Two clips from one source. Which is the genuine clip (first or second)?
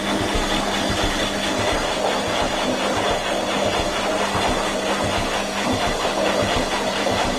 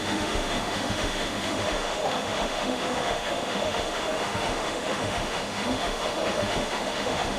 first